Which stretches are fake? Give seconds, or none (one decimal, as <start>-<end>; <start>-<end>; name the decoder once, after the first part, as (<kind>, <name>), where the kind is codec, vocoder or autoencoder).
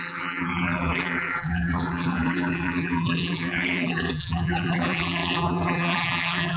0.0-6.6 (vocoder, BigVGAN v2)